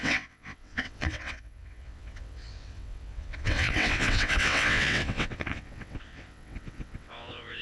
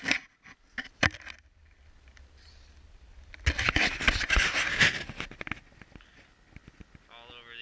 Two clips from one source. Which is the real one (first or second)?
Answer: second